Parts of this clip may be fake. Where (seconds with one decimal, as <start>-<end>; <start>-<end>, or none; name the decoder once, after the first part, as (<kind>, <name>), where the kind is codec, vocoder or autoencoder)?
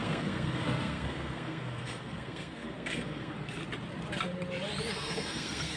0.0-3.6 (codec, SNAC); 4.9-5.8